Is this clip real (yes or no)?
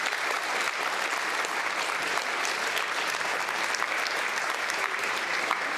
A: no